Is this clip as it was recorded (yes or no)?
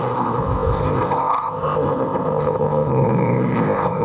no